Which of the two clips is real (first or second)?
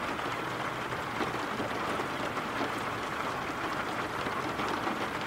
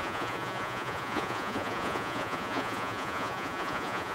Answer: first